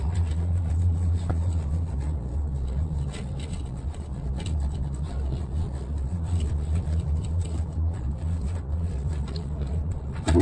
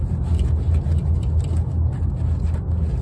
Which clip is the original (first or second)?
second